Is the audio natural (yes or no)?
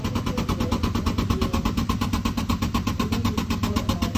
yes